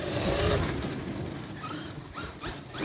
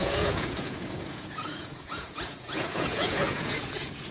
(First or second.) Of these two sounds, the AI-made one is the second